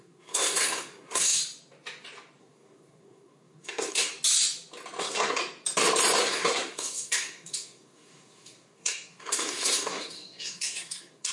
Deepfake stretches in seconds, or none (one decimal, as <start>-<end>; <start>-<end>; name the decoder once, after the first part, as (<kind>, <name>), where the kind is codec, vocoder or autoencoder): 0.0-1.4 (codec, SNAC); 2.4-4.1; 5.0-5.4; 6.2-11.3